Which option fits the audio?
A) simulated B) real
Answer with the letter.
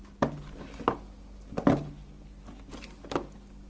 B